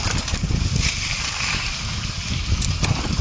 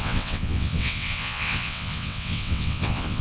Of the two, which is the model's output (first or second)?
second